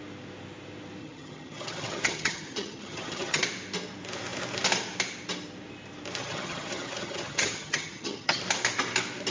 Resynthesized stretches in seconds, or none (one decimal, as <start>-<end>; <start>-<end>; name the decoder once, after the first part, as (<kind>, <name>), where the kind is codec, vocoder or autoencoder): 1.0-3.4 (vocoder, HiFi-GAN); 6.2-8.4